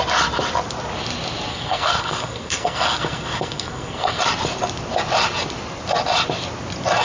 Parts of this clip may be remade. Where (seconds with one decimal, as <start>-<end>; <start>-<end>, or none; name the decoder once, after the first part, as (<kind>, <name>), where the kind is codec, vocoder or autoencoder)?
1.5-4.2 (codec, SNAC)